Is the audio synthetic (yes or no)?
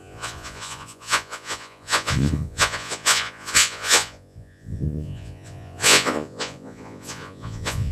yes